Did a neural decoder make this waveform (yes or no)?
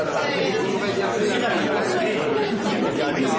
no